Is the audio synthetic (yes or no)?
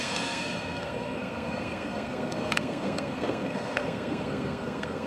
yes